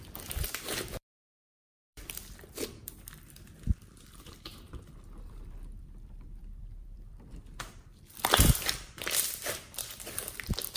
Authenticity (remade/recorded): remade